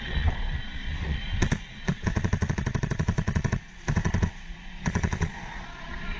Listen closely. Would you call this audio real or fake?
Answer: fake